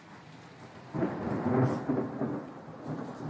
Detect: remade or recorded recorded